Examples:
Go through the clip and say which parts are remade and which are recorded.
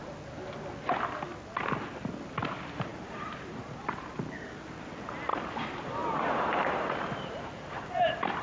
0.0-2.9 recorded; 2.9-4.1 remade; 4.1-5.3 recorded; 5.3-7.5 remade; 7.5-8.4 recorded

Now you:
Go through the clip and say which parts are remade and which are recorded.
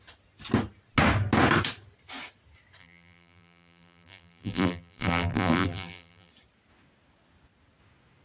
0.0-2.8 recorded; 2.8-6.3 remade; 6.3-8.2 recorded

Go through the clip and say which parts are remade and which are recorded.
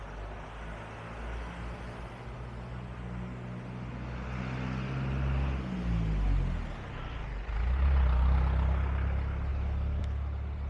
0.0-10.7 recorded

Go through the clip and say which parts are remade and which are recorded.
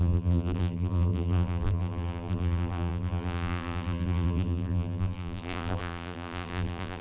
0.0-7.0 remade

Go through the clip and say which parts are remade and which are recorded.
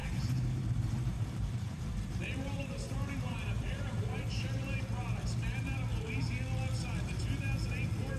0.0-4.4 remade; 4.4-8.2 recorded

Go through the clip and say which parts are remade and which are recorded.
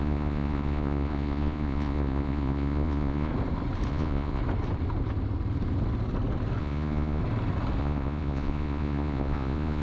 0.0-3.3 remade; 3.3-3.9 recorded; 3.9-4.4 remade; 4.4-6.6 recorded; 6.6-7.2 remade; 7.2-7.8 recorded; 7.8-9.8 remade